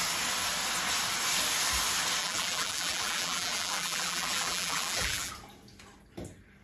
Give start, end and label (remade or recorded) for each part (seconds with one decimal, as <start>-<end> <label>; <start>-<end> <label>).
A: 0.0-2.2 recorded; 2.2-5.3 remade; 5.3-6.6 recorded